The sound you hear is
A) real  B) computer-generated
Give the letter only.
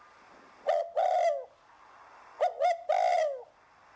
A